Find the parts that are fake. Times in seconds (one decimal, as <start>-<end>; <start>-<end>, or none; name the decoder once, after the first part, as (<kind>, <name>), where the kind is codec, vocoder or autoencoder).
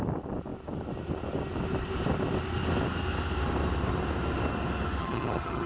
5.0-5.7 (vocoder, HiFi-GAN)